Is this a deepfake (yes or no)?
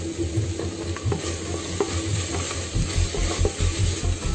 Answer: no